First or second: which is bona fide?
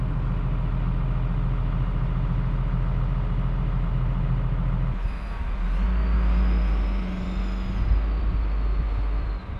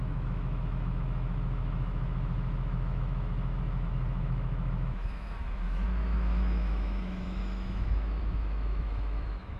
first